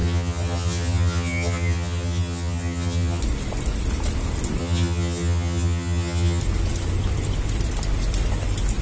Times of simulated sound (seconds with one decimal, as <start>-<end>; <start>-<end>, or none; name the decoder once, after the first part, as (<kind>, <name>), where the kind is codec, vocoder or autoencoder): 0.0-3.2 (vocoder, HiFi-GAN); 4.6-6.4